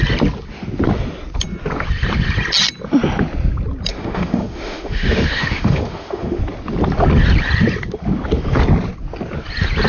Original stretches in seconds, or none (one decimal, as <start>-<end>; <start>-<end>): 0.0-3.9; 6.4-9.9